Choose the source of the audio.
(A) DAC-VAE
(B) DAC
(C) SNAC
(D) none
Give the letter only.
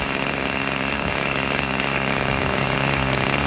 B